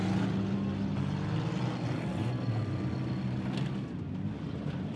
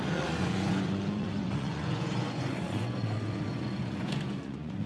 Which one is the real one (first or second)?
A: first